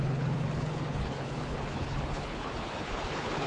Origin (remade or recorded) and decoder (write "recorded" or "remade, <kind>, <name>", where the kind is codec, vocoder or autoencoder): remade, codec, HILCodec